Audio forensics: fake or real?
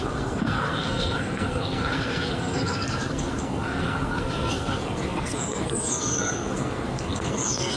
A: fake